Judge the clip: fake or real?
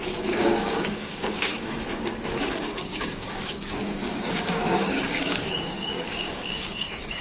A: fake